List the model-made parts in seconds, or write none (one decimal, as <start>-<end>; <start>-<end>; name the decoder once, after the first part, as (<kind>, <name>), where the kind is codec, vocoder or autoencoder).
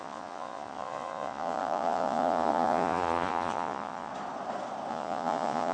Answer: 0.0-4.1 (vocoder, Vocos); 4.9-5.7